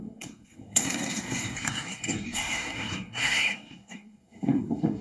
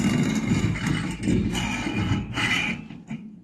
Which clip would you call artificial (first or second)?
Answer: first